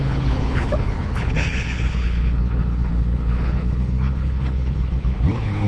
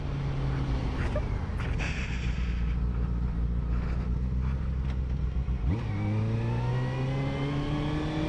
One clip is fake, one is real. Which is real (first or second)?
second